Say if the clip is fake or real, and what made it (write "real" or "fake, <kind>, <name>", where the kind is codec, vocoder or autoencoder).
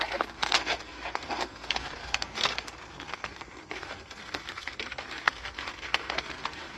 fake, codec, SNAC